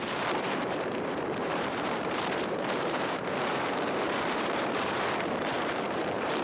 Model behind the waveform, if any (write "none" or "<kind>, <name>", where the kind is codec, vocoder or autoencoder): vocoder, BigVGAN v2